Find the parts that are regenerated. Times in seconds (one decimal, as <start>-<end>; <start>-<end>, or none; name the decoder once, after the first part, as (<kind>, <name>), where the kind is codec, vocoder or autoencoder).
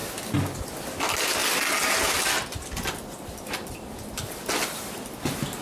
none